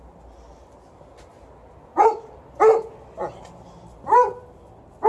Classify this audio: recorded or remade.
recorded